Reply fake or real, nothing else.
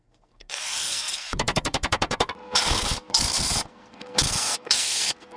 fake